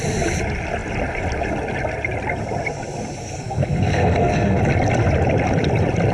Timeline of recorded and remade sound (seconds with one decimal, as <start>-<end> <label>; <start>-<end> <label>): 0.0-3.2 recorded; 3.2-4.6 remade; 4.6-6.1 recorded